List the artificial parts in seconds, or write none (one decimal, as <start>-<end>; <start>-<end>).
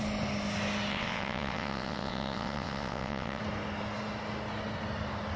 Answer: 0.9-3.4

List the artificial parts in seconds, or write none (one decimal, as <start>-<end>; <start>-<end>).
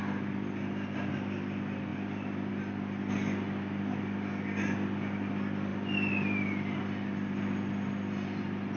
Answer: 0.0-1.1; 1.9-2.5; 5.7-8.4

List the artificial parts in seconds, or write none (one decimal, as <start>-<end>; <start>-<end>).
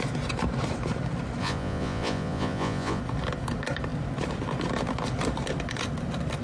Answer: 1.4-3.0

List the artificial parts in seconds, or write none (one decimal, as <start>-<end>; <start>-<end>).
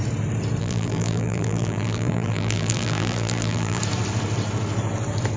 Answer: 0.6-3.8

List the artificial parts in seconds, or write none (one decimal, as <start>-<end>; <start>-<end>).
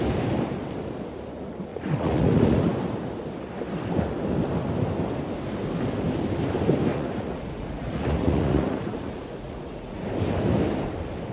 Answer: 1.7-2.7; 6.9-10.1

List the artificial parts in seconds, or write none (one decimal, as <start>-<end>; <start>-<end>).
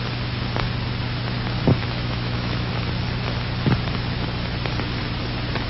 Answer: 1.8-2.7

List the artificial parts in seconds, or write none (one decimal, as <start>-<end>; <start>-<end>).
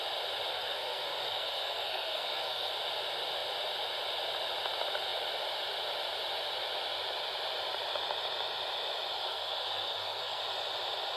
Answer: 0.5-2.7; 9.2-10.4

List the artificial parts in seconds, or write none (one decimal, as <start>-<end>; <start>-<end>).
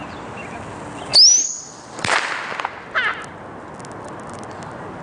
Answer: none